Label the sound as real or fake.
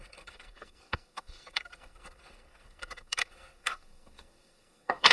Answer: fake